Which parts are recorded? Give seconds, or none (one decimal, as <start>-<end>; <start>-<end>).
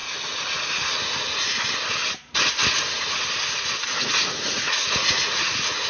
0.0-3.5